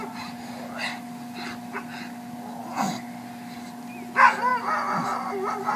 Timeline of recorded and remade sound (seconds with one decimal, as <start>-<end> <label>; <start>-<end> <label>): 0.0-4.5 recorded; 4.5-5.3 remade; 5.3-5.8 recorded